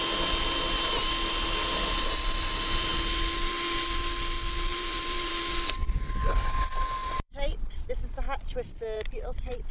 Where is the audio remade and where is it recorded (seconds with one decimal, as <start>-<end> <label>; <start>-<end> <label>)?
0.0-4.7 recorded; 4.7-5.3 remade; 5.3-7.0 recorded; 7.0-7.9 remade; 7.9-9.7 recorded